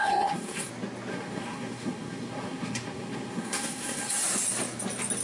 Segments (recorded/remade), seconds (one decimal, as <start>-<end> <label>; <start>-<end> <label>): 0.0-0.7 remade; 0.7-1.1 recorded; 1.1-4.2 remade; 4.2-5.2 recorded